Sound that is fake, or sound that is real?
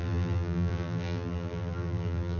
fake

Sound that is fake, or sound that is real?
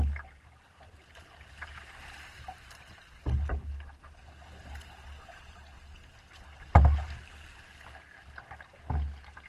real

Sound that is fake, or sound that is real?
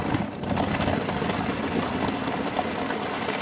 real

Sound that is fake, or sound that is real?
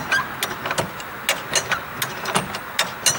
real